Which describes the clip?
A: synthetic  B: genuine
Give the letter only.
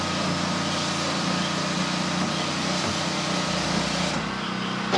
B